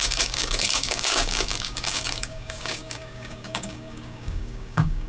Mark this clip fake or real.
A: fake